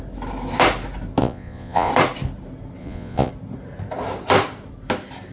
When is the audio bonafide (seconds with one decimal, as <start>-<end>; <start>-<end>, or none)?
0.0-1.2; 1.9-2.8; 3.3-5.3